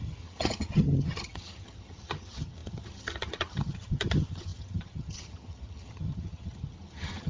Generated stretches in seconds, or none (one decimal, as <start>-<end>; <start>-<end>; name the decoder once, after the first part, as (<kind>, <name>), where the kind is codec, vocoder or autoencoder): 0.0-7.3 (vocoder, HiFi-GAN)